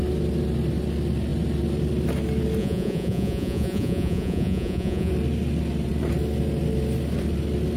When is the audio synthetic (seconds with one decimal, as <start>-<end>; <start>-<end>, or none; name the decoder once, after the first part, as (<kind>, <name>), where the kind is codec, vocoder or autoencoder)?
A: 2.6-5.1 (vocoder, Vocos)

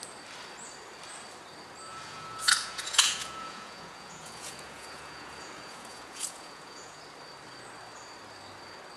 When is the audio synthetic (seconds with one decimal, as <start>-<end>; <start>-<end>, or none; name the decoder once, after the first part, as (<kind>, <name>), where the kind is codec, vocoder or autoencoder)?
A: 1.9-7.0 (vocoder, Vocos)

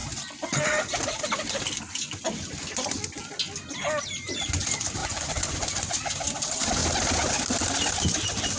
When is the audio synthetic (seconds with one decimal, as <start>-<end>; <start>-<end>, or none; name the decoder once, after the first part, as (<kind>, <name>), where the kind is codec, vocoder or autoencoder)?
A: 5.0-5.9 (vocoder, Vocos)

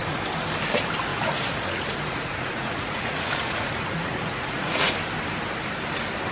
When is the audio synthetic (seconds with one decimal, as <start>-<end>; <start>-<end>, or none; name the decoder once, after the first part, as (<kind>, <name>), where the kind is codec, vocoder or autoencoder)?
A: 1.1-4.9 (vocoder, Vocos)